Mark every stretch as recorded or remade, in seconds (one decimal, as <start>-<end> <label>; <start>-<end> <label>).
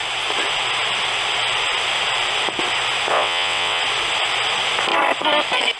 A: 0.0-3.1 recorded; 3.1-3.8 remade; 3.8-5.8 recorded